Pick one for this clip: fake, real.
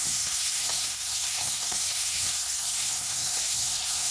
fake